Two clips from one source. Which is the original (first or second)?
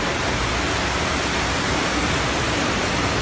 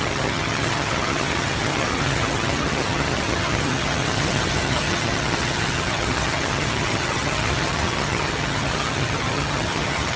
first